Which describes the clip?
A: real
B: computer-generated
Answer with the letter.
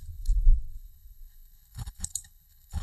B